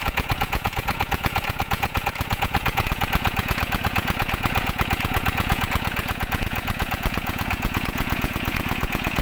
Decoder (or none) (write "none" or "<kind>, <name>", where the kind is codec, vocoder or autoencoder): vocoder, Vocos